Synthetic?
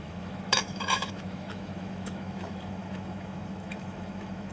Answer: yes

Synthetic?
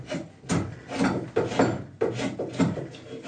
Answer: no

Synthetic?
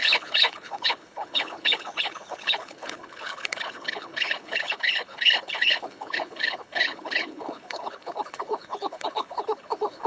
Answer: yes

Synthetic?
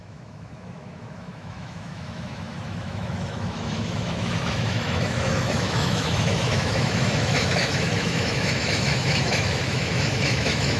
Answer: yes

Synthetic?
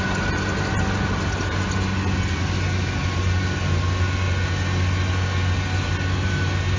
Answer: no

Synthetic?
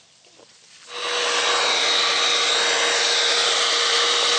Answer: no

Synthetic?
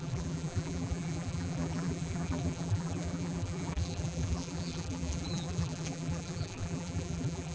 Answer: yes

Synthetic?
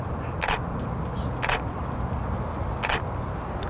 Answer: no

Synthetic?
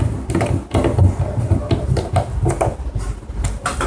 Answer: no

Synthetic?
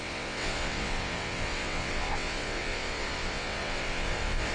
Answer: yes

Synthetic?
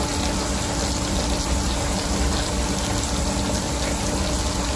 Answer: no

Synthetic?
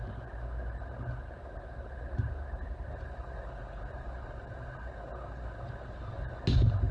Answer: no